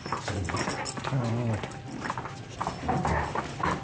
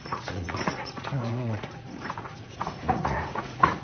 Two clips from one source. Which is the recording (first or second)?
first